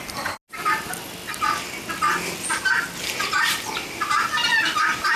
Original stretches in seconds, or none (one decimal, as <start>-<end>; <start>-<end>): 0.0-5.2